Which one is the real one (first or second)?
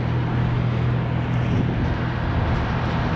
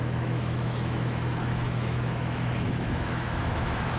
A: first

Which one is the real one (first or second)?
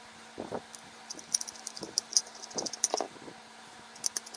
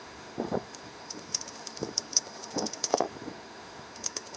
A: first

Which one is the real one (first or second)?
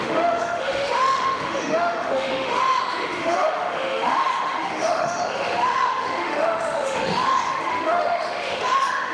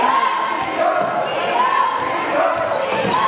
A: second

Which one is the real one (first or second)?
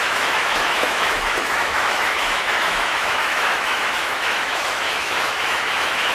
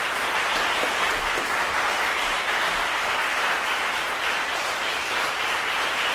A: second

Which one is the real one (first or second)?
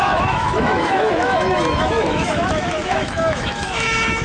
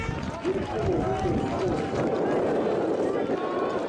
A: second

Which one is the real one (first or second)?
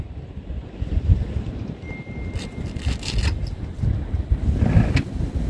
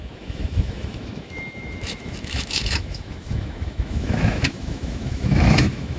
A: first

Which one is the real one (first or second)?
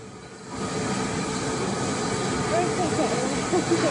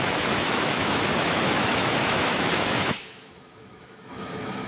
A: first